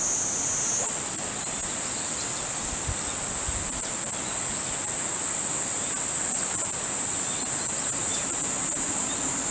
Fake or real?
real